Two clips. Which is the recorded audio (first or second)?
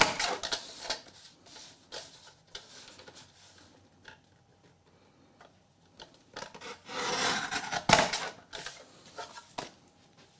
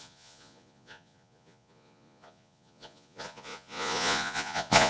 first